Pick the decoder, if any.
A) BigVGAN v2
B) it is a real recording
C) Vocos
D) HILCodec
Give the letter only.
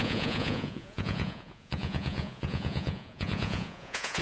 C